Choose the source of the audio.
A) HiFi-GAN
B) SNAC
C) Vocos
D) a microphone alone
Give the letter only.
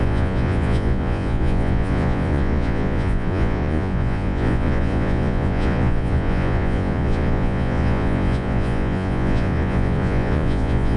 C